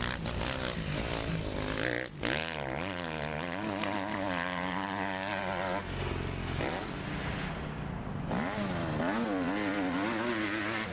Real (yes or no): yes